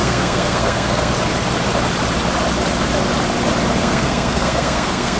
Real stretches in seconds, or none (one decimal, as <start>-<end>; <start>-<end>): 1.1-3.8